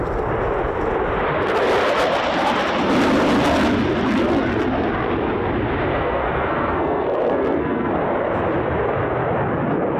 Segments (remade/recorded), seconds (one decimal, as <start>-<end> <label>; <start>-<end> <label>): 0.0-5.9 recorded; 5.9-7.9 remade; 7.9-10.0 recorded